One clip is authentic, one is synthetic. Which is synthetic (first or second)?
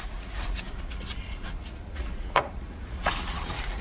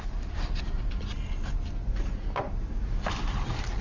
first